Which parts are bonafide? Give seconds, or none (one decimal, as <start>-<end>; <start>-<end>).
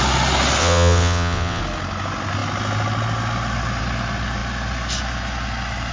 0.0-0.6; 1.6-5.9